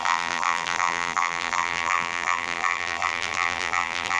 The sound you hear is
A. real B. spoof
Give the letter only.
B